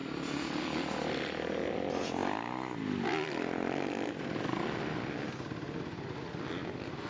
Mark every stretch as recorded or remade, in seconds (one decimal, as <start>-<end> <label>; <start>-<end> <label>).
0.0-7.1 recorded